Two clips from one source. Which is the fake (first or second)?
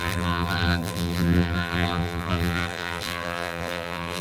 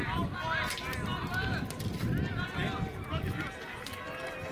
first